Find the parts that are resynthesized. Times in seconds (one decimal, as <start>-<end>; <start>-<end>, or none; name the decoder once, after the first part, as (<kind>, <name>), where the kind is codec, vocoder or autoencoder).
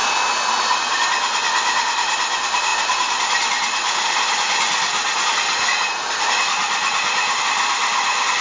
none